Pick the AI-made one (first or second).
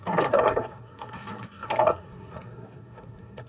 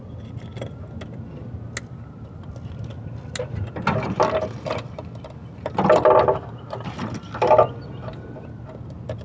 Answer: first